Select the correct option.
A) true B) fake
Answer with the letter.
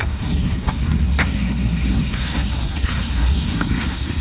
B